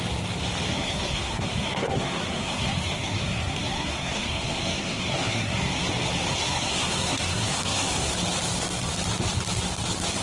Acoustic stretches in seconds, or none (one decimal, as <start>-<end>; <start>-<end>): 0.0-0.7; 5.8-6.3; 8.1-10.2